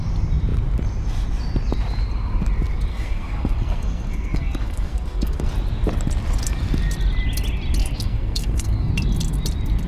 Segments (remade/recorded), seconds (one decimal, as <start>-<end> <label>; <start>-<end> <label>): 0.0-2.9 recorded; 2.9-5.5 remade; 5.5-7.8 recorded; 7.8-8.9 remade; 8.9-9.9 recorded